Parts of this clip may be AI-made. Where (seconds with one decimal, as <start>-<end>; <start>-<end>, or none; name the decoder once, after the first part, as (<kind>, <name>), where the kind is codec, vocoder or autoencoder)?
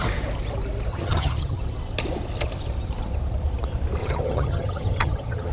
0.9-1.6 (vocoder, HiFi-GAN); 4.0-5.5